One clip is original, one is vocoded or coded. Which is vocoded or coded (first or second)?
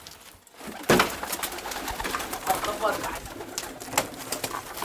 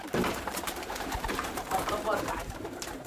second